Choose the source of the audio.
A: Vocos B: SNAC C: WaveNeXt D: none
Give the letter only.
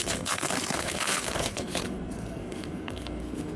B